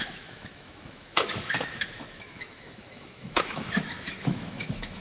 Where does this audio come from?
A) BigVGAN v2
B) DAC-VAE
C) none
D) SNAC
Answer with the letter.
B